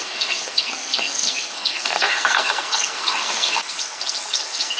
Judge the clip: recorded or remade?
remade